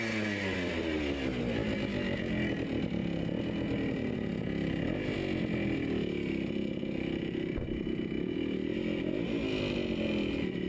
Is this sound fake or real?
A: real